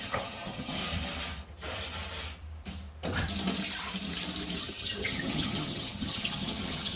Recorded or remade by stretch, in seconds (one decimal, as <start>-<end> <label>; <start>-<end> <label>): 0.0-0.8 remade; 0.8-4.6 recorded; 4.6-7.0 remade